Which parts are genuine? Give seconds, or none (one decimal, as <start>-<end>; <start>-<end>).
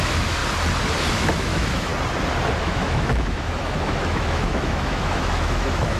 0.4-1.1; 1.9-2.6